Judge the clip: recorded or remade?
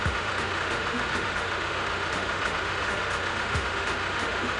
remade